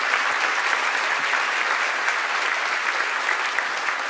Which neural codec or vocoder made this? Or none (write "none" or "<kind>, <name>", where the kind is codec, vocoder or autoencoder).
none